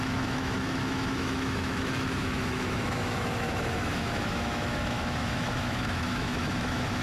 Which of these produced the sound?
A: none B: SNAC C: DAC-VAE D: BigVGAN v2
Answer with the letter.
C